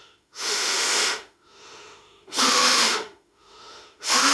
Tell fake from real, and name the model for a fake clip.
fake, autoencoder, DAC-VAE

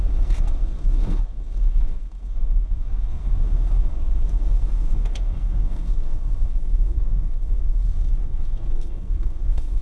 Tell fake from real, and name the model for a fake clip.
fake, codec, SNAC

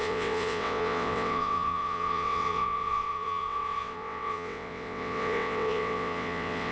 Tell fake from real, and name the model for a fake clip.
fake, vocoder, WaveNeXt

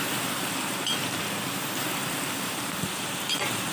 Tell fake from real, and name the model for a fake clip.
fake, vocoder, BigVGAN v2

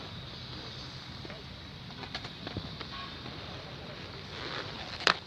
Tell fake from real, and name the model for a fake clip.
fake, vocoder, BigVGAN v2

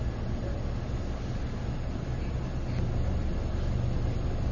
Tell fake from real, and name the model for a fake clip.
real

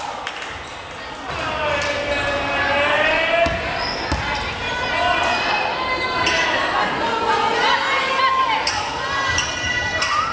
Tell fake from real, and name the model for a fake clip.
real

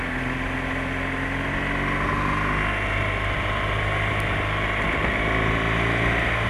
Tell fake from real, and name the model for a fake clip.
real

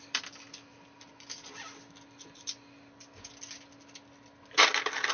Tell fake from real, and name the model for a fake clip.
real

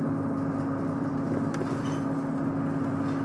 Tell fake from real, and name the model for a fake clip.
real